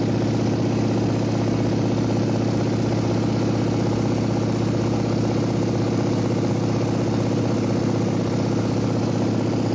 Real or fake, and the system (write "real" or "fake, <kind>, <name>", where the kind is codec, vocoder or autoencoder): real